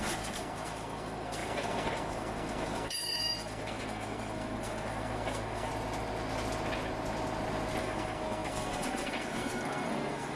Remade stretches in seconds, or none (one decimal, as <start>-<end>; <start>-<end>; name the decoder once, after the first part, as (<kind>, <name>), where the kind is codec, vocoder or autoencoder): 0.0-5.7 (codec, SNAC); 7.8-10.4